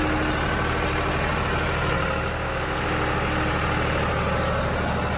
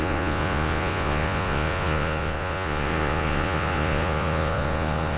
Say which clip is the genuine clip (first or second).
first